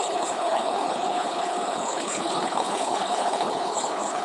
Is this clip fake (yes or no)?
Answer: yes